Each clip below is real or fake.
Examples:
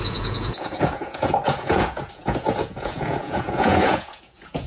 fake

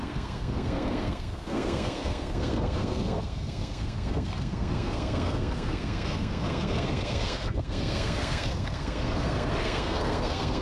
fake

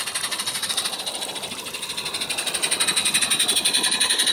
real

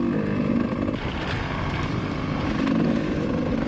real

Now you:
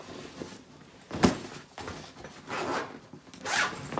real